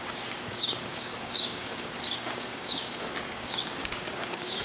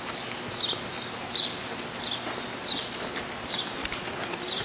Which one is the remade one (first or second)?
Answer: first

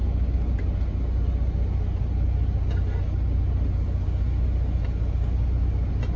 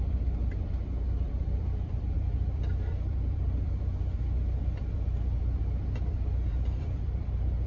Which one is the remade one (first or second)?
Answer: second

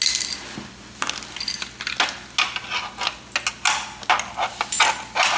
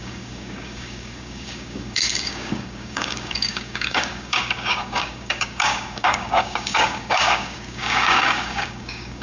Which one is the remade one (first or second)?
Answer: second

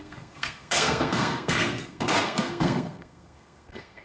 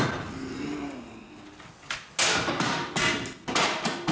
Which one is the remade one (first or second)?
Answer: first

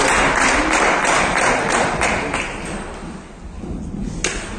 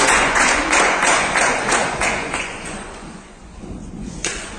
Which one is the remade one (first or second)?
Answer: second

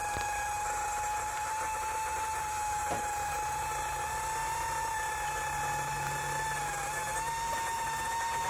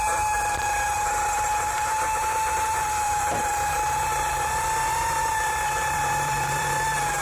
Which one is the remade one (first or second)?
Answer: second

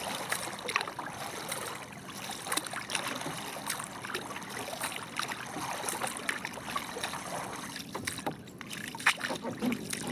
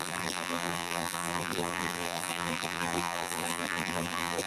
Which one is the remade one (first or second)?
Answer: second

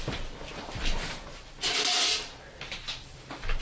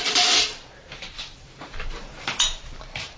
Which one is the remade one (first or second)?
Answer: second